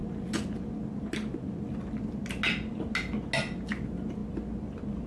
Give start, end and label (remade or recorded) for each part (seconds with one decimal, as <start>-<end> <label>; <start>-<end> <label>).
0.0-5.1 recorded